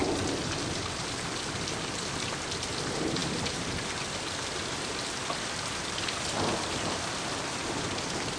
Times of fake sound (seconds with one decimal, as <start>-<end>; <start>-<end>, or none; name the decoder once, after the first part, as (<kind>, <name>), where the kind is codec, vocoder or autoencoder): 0.9-8.4 (vocoder, BigVGAN v2)